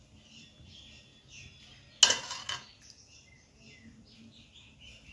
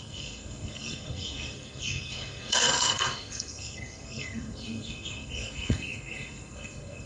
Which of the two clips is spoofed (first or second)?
second